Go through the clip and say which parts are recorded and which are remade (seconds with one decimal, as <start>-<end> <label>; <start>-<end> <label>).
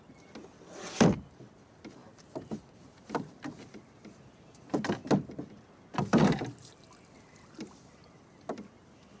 0.0-9.2 recorded